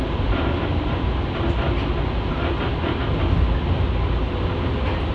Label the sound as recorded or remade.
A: recorded